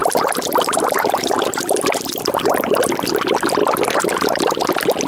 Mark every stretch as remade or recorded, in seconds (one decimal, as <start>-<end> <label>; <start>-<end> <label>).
0.0-2.9 remade; 2.9-3.6 recorded; 3.6-4.4 remade; 4.4-5.1 recorded